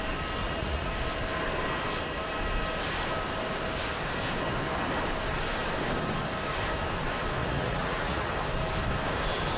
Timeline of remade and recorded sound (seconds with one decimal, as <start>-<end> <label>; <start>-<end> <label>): 0.0-0.4 recorded; 0.4-0.9 remade; 0.9-7.4 recorded; 7.4-8.3 remade; 8.3-9.6 recorded